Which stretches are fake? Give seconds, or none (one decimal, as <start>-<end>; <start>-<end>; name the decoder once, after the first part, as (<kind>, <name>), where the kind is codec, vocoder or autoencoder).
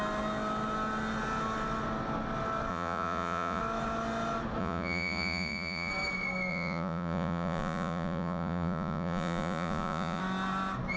2.7-3.6 (vocoder, Vocos); 4.6-5.9; 6.5-10.2